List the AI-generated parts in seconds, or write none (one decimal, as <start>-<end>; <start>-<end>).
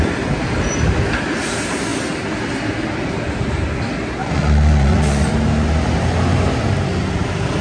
4.2-5.3